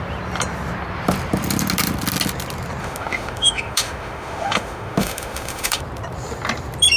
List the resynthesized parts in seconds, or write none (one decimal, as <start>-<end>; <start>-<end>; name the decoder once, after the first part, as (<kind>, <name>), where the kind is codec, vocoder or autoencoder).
2.8-5.8 (autoencoder, DAC-VAE)